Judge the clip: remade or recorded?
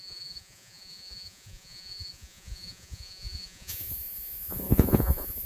remade